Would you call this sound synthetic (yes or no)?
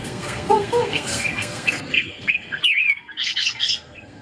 yes